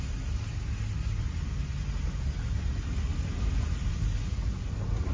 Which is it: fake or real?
real